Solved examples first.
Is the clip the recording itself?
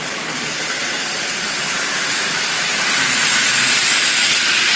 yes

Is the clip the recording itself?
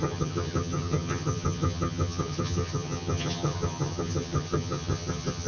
no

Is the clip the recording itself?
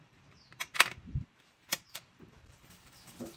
no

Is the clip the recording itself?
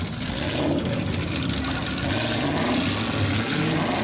yes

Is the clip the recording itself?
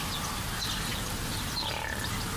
yes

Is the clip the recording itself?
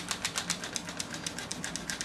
yes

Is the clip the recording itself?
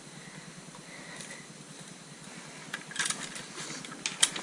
yes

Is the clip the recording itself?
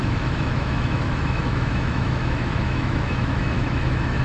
no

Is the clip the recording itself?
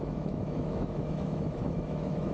no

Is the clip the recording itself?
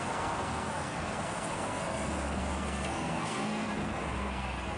no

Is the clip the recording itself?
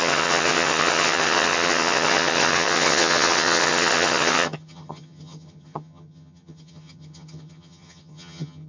no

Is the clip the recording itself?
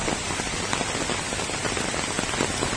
yes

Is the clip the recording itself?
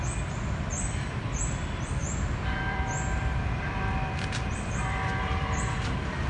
no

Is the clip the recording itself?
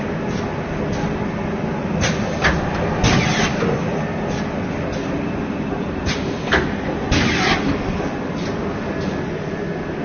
yes